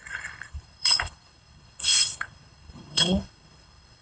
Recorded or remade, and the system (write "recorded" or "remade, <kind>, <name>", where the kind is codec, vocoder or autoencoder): remade, codec, HILCodec